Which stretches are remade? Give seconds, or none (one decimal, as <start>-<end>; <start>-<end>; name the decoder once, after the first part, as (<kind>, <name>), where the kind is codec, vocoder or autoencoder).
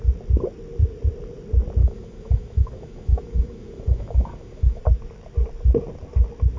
1.8-4.8 (autoencoder, DAC-VAE)